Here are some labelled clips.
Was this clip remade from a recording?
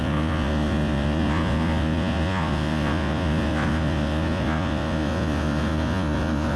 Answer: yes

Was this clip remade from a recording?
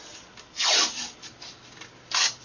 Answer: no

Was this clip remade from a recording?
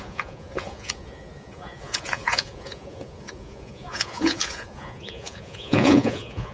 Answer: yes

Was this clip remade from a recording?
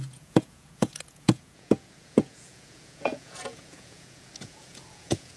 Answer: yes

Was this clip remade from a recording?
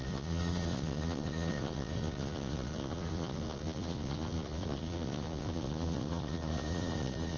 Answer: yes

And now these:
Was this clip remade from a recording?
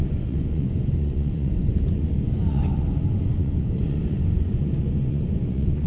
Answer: yes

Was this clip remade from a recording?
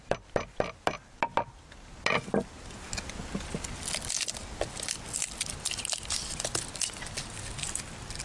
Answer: no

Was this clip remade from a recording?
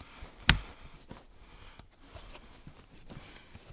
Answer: no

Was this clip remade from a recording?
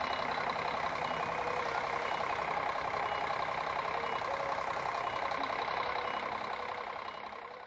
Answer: no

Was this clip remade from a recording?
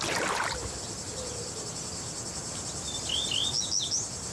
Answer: no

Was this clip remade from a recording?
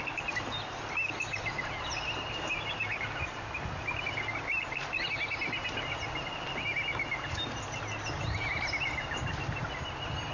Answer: no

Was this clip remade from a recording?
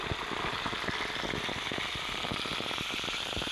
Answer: no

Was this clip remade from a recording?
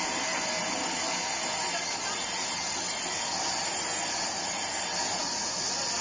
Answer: no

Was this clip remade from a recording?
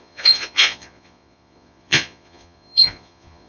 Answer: yes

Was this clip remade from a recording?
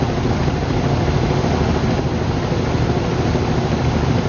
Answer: no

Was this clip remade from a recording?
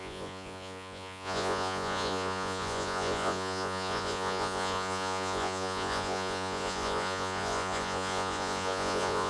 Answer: yes